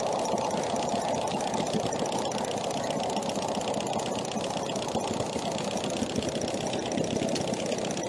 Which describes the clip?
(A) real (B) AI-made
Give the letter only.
A